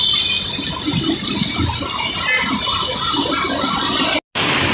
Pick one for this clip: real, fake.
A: real